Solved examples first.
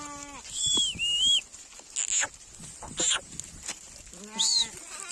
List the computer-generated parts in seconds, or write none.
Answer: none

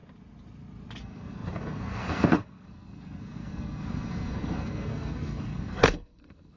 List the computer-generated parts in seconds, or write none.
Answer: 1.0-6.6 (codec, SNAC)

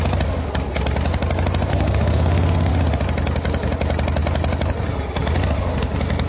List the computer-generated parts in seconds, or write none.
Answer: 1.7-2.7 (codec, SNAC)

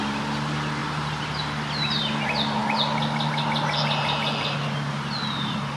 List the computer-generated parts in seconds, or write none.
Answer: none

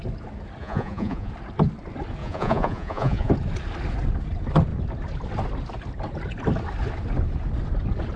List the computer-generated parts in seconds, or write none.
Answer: 0.6-1.3 (vocoder, Vocos); 2.2-3.3